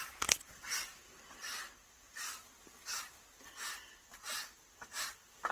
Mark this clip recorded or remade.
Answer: recorded